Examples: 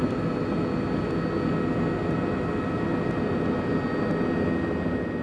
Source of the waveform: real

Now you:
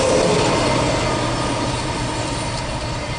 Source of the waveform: real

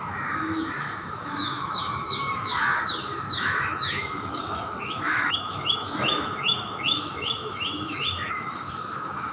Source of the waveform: fake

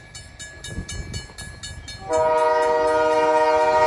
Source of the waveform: real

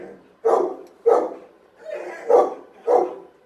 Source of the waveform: real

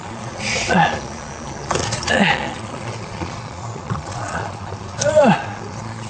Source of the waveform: fake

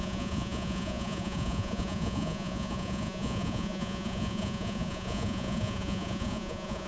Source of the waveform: fake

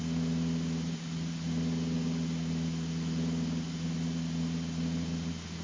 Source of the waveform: real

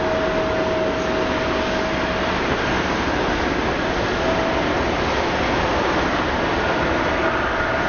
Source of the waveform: real